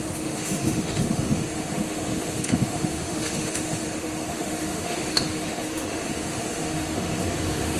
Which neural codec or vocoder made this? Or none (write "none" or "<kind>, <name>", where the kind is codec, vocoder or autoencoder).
autoencoder, DAC-VAE